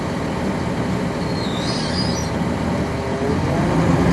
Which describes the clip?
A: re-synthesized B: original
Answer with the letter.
B